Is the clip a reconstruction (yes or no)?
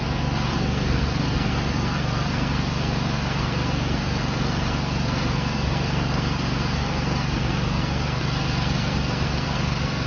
yes